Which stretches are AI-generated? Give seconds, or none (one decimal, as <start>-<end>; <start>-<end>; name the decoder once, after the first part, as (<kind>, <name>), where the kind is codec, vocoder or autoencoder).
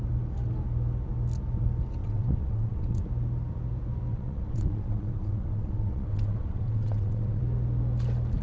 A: 2.0-3.0 (vocoder, WaveNeXt); 4.1-7.4